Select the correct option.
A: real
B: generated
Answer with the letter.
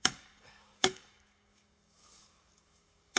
B